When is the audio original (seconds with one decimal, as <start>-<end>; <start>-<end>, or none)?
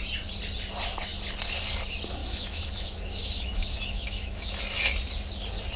0.0-2.2; 4.6-5.8